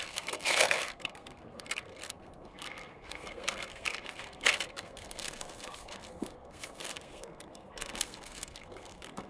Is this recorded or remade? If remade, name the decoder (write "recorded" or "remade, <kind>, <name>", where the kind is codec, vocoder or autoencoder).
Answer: remade, codec, SNAC